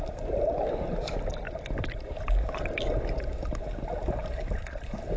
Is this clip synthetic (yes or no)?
no